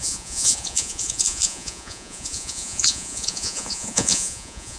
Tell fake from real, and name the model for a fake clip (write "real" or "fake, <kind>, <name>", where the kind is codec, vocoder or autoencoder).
fake, vocoder, Vocos